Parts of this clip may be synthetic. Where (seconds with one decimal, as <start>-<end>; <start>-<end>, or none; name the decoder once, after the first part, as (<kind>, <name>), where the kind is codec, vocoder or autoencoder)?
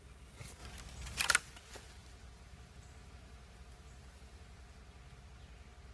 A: none